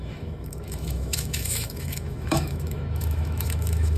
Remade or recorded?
remade